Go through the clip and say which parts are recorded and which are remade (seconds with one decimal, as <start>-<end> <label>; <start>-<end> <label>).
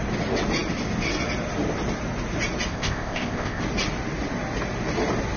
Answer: 0.0-2.7 recorded; 2.7-3.6 remade; 3.6-5.4 recorded